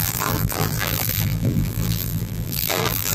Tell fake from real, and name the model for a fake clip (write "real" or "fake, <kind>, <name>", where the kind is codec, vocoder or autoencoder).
fake, vocoder, BigVGAN v2